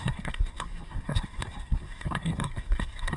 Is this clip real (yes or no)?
no